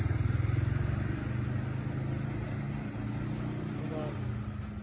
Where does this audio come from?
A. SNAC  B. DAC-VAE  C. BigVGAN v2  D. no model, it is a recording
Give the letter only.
D